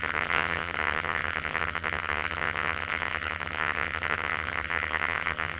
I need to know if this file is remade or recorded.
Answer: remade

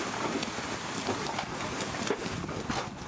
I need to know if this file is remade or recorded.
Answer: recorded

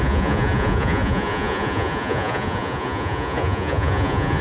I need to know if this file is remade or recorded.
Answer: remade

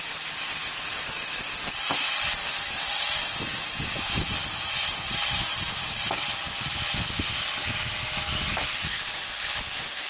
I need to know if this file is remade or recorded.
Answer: recorded